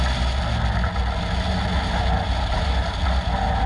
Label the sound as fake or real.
real